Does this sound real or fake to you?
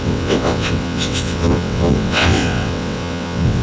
fake